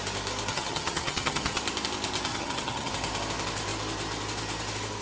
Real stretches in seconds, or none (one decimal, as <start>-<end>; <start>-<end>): 0.0-0.5; 1.6-2.3; 2.9-5.0